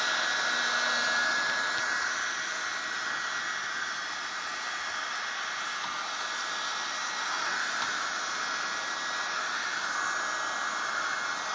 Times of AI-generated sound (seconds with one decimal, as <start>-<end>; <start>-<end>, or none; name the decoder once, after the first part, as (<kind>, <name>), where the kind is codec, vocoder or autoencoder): none